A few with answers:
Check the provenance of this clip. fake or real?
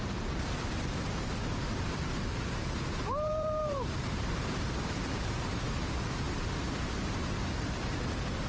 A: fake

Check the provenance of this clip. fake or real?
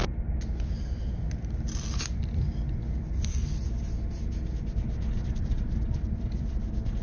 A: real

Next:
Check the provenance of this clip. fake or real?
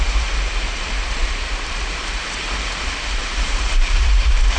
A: fake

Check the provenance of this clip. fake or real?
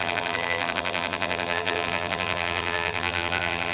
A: fake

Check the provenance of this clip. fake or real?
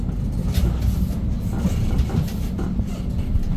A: real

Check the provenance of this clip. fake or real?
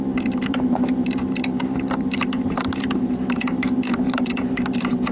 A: fake